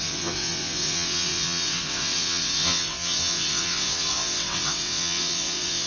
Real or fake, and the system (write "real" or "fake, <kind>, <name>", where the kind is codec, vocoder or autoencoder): fake, vocoder, WaveNeXt